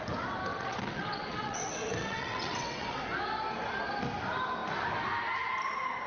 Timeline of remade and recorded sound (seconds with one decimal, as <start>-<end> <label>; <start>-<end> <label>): 0.0-0.5 recorded; 0.5-3.0 remade; 3.0-6.1 recorded